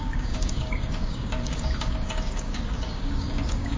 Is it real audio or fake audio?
fake